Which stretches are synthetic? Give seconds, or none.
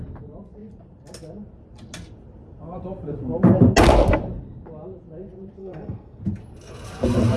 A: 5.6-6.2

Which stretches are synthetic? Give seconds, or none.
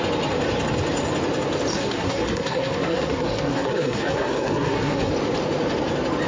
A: 1.7-5.1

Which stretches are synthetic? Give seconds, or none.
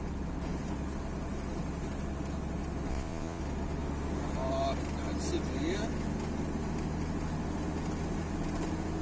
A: 2.9-3.4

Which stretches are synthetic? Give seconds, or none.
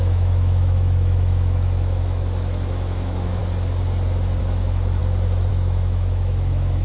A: 0.0-3.4; 4.4-5.0; 5.5-6.8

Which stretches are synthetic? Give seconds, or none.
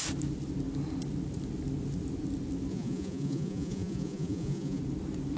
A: 2.7-4.8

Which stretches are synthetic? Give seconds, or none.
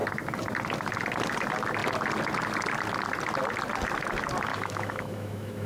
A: 4.5-5.7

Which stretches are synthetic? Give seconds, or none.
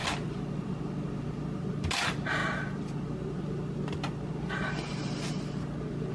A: none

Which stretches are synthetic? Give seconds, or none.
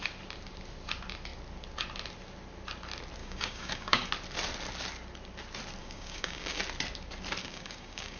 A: 3.2-4.1; 5.8-6.6; 7.4-8.2